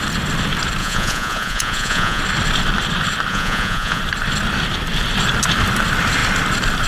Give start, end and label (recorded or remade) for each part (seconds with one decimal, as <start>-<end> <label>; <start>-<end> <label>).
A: 0.0-0.8 recorded; 0.8-2.2 remade; 2.2-3.3 recorded; 3.3-4.0 remade; 4.0-6.9 recorded